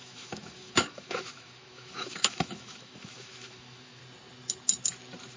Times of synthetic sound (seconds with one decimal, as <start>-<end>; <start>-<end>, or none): 0.0-4.0